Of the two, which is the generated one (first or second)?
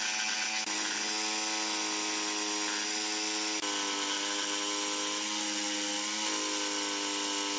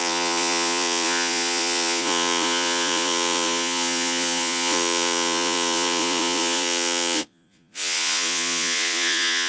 second